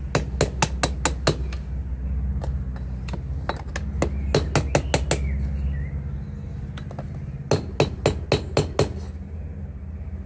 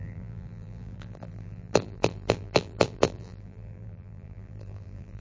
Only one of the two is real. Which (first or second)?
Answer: first